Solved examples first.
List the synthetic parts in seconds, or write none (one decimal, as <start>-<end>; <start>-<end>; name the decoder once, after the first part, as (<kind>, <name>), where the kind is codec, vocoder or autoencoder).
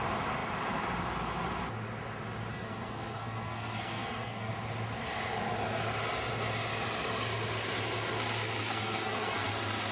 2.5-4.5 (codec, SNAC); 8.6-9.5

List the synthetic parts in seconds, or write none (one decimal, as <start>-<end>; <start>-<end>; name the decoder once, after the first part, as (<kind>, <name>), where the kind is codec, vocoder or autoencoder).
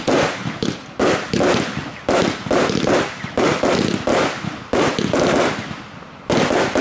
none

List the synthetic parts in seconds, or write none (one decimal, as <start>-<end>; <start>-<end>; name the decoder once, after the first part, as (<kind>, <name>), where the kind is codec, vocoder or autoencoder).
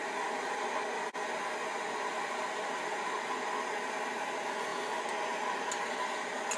none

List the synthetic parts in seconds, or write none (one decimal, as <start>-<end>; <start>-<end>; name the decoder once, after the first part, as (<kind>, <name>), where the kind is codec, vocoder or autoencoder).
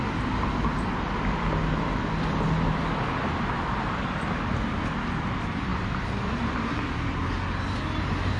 none